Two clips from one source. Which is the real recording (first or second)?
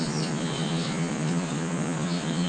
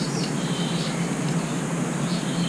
second